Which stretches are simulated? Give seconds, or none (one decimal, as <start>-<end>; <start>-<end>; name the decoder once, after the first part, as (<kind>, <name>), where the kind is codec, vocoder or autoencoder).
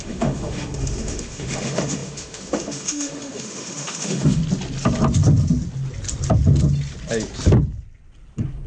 0.0-4.4 (autoencoder, DAC-VAE)